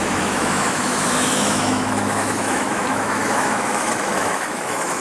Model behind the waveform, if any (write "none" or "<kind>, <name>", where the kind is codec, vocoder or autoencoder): autoencoder, DAC-VAE